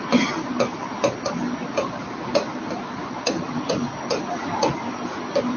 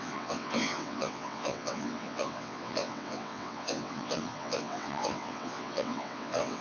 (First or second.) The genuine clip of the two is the first